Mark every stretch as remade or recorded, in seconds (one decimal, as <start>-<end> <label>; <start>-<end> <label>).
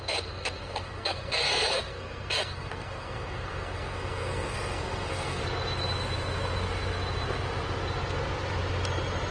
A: 0.0-5.4 remade; 5.4-9.3 recorded